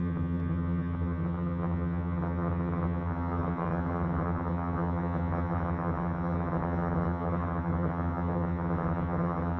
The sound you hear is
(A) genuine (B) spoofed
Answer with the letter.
B